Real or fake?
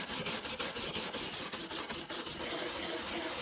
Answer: real